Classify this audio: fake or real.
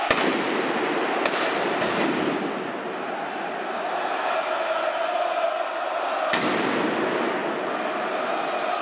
real